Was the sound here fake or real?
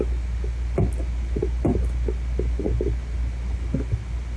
real